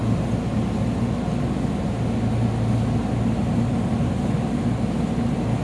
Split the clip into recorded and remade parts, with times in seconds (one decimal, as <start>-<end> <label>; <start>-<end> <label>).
0.0-5.6 recorded